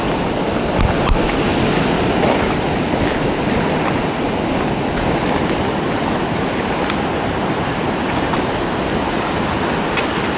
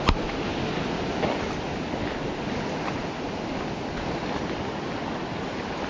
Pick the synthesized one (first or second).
second